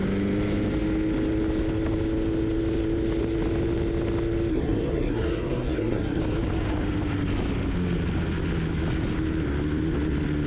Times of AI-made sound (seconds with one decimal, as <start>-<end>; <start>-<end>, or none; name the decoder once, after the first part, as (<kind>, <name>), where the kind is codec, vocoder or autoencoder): 4.5-6.2 (codec, SNAC)